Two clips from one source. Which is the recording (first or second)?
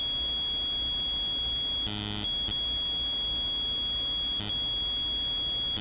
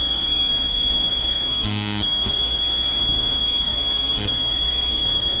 first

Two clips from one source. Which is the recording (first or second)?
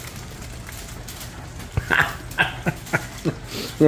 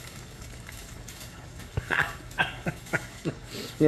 first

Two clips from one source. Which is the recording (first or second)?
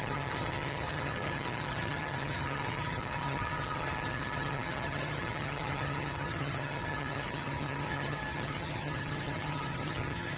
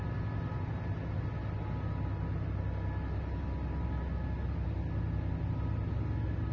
second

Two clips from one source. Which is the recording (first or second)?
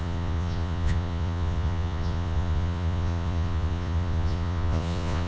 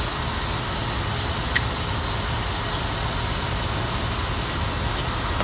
second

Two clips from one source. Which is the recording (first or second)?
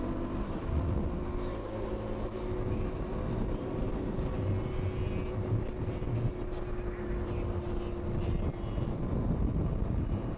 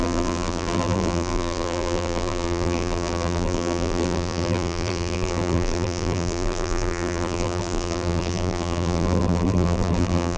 first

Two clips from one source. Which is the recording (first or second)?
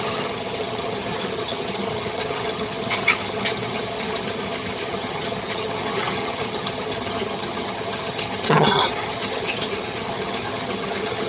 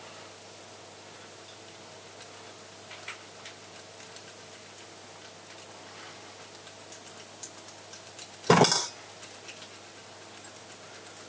second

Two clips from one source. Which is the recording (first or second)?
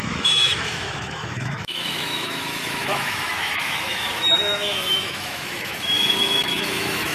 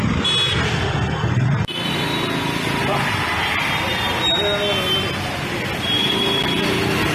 second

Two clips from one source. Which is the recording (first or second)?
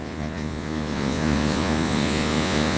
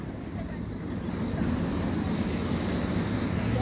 second